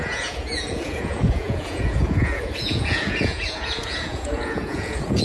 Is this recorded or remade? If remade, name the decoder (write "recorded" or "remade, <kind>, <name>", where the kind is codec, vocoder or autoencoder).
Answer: remade, vocoder, Vocos